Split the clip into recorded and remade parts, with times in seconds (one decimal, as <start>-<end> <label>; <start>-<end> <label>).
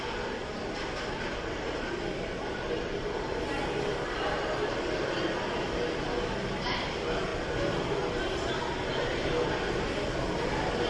0.0-10.9 recorded